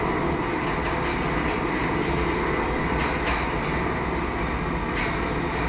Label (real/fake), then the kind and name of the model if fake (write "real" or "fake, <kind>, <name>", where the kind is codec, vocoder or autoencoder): real